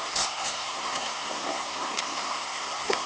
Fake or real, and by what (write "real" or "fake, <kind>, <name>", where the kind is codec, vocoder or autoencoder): fake, codec, SNAC